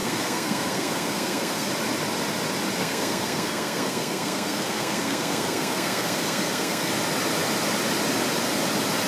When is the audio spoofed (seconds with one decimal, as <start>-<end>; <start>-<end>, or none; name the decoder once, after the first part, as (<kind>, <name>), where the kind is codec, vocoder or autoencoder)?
0.0-1.7 (codec, SNAC); 2.8-6.9